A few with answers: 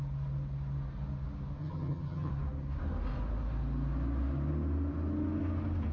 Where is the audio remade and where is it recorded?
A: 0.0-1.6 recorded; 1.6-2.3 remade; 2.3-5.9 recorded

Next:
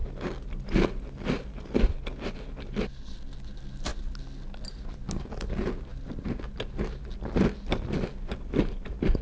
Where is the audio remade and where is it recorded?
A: 0.0-9.2 recorded

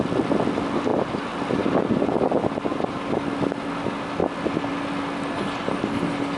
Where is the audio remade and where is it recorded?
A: 0.0-6.4 recorded

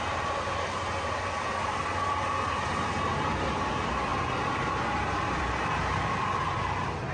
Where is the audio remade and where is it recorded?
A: 0.0-4.1 recorded; 4.1-5.5 remade; 5.5-7.1 recorded

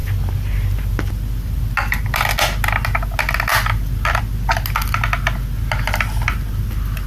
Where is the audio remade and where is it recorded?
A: 0.0-7.1 recorded

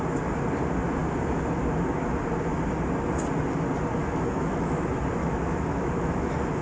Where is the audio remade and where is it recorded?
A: 0.0-4.0 recorded; 4.0-4.8 remade; 4.8-5.2 recorded; 5.2-6.6 remade